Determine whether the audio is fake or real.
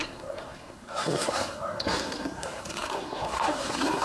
fake